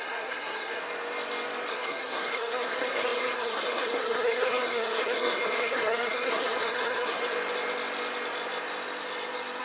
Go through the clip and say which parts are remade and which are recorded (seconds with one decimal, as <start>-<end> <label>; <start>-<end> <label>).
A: 0.0-0.8 remade; 0.8-1.7 recorded; 1.7-7.2 remade; 7.2-9.6 recorded